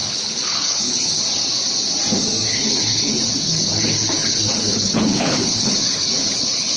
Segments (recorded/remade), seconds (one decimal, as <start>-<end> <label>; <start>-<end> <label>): 0.0-1.2 remade; 1.2-2.5 recorded; 2.5-6.8 remade